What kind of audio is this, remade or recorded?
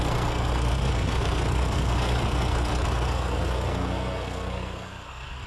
remade